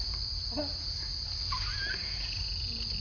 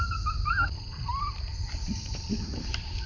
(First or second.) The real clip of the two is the first